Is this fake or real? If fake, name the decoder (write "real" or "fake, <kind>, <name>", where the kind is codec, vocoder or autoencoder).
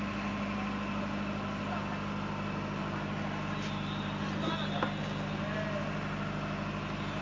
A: real